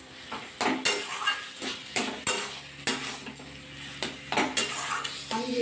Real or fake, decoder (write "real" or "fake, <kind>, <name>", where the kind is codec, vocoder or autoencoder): real